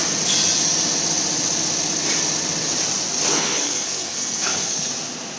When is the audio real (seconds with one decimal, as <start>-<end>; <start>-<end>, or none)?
0.0-3.3; 4.9-5.4